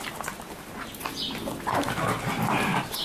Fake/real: real